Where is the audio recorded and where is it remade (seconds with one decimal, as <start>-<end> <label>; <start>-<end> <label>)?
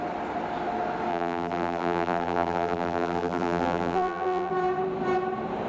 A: 0.0-1.1 recorded; 1.1-4.5 remade; 4.5-5.7 recorded